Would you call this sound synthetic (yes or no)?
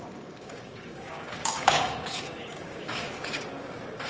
yes